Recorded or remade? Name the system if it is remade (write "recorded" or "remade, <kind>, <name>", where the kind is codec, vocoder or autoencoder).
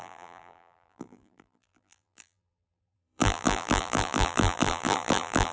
remade, vocoder, BigVGAN v2